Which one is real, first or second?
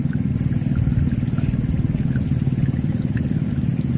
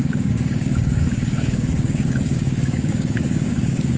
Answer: first